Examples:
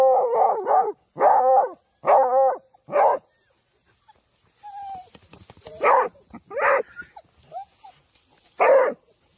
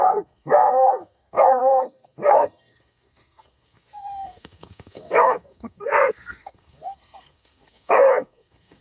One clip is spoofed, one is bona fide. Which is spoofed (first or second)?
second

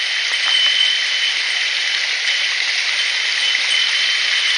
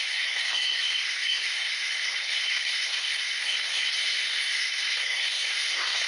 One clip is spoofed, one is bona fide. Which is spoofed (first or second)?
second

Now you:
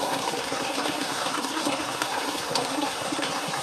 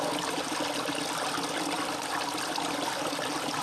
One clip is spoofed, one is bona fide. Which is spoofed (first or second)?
first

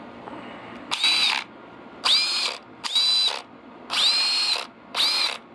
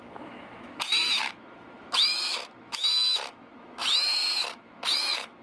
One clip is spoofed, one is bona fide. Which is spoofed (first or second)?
second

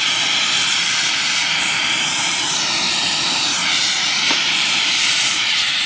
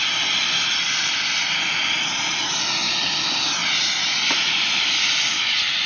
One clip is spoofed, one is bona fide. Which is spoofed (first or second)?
first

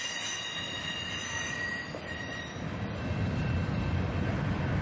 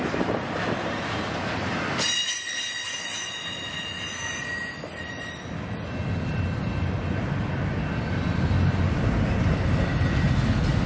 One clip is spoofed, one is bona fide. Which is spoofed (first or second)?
first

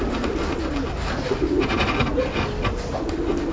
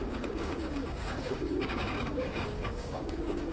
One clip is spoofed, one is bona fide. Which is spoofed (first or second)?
second